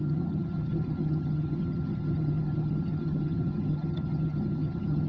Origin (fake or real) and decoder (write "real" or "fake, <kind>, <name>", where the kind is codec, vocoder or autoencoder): fake, vocoder, HiFi-GAN